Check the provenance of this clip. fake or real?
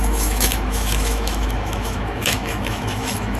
fake